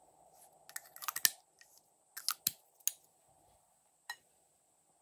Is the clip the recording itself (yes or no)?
yes